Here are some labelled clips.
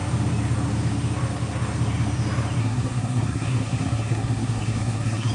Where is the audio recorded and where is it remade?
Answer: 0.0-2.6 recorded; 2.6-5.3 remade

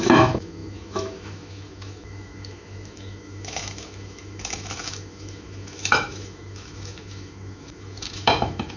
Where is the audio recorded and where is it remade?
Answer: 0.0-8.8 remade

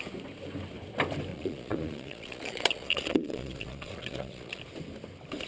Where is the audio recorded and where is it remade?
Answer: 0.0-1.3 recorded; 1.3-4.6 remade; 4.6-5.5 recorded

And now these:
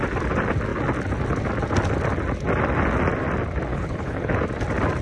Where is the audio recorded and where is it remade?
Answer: 0.0-3.7 recorded; 3.7-4.3 remade; 4.3-5.0 recorded

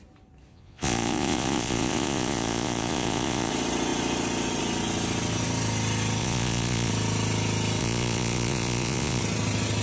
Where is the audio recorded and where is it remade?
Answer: 0.0-0.5 recorded; 0.5-3.5 remade; 3.5-6.2 recorded; 6.2-6.9 remade; 6.9-7.8 recorded; 7.8-9.2 remade; 9.2-9.8 recorded